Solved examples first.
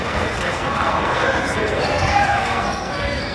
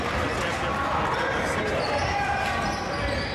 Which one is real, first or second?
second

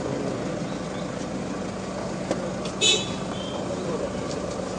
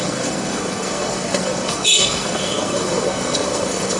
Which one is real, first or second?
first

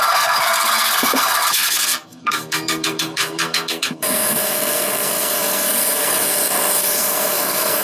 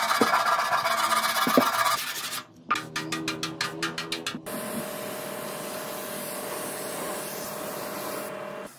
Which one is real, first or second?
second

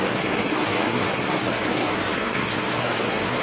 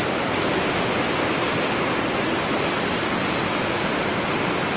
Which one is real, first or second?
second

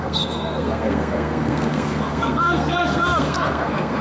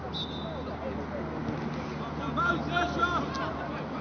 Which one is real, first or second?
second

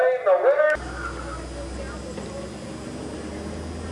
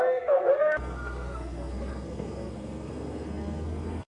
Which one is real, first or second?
first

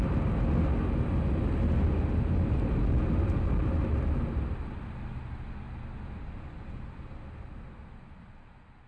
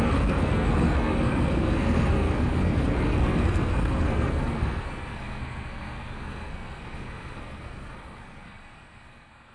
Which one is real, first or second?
first